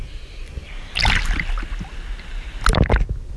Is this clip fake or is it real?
real